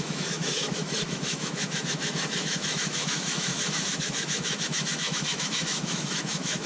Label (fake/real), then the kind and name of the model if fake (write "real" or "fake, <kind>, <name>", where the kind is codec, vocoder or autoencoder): fake, autoencoder, DAC-VAE